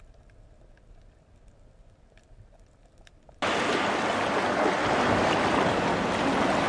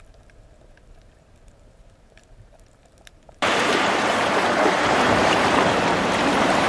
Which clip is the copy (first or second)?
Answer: second